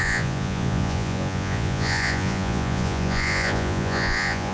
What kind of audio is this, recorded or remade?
remade